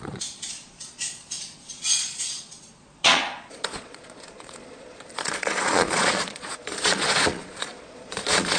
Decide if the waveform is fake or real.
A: fake